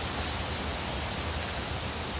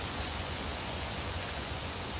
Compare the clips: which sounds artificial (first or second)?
second